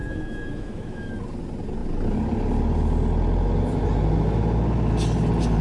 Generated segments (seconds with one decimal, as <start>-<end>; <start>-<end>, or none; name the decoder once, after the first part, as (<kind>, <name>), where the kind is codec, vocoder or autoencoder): 0.0-1.1 (autoencoder, DAC-VAE)